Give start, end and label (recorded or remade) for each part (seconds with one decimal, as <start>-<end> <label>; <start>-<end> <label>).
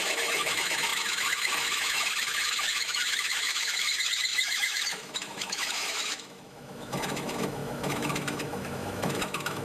0.0-9.6 remade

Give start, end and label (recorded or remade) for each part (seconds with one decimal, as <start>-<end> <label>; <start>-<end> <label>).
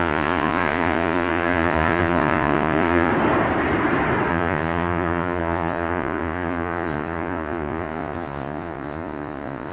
0.0-3.1 remade; 3.1-4.3 recorded; 4.3-9.7 remade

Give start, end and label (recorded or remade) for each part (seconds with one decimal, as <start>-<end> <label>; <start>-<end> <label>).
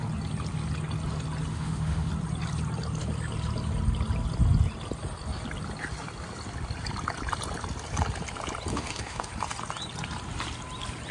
0.0-1.5 recorded; 1.5-2.1 remade; 2.1-8.7 recorded; 8.7-9.3 remade; 9.3-11.1 recorded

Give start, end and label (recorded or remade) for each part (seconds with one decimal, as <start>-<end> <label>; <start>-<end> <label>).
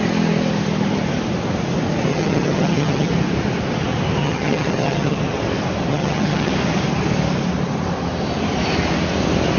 0.0-2.1 recorded; 2.1-3.1 remade; 3.1-4.2 recorded; 4.2-5.2 remade; 5.2-5.9 recorded; 5.9-6.5 remade; 6.5-9.6 recorded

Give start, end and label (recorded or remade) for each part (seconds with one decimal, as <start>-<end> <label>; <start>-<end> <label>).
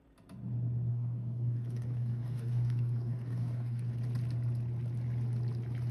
0.0-0.9 recorded; 0.9-3.9 remade; 3.9-5.9 recorded